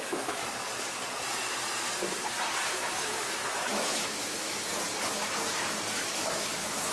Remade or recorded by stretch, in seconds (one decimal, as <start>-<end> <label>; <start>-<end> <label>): 0.0-0.4 remade; 0.4-2.7 recorded; 2.7-4.7 remade; 4.7-6.0 recorded; 6.0-6.9 remade